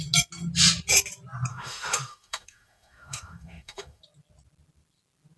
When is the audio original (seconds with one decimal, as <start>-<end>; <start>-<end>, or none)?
0.0-1.5; 4.0-5.4